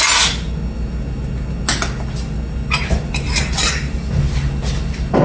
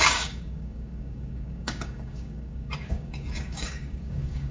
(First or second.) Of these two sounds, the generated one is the second